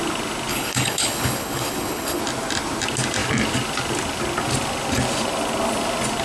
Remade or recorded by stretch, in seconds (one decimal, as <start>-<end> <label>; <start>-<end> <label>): 0.0-0.5 recorded; 0.5-2.2 remade; 2.2-6.2 recorded

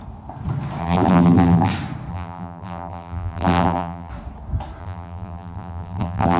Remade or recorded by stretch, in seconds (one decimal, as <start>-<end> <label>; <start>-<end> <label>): 0.0-0.8 recorded; 0.8-1.7 remade; 1.7-2.1 recorded; 2.1-4.1 remade; 4.1-4.8 recorded; 4.8-6.4 remade

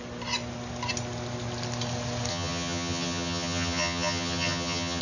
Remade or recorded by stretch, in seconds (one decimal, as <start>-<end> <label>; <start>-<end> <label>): 0.0-2.3 recorded; 2.3-5.0 remade

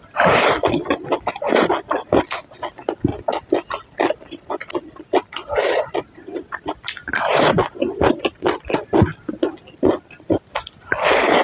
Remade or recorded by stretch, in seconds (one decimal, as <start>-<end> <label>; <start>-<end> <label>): 0.0-11.4 recorded

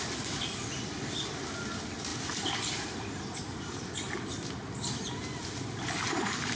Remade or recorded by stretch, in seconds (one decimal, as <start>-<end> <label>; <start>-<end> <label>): 0.0-6.6 recorded

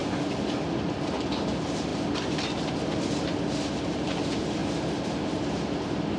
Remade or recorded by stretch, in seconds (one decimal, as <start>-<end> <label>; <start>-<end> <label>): 0.0-6.2 recorded

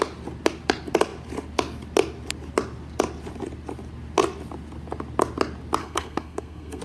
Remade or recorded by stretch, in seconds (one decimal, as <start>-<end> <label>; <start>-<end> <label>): 0.0-5.8 recorded; 5.8-6.8 remade

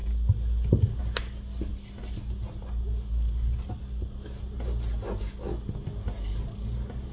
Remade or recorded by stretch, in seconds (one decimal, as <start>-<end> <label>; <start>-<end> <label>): 0.0-7.1 recorded